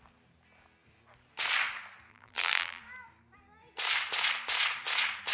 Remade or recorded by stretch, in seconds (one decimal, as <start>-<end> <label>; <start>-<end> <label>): 0.0-2.1 recorded; 2.1-2.8 remade; 2.8-5.3 recorded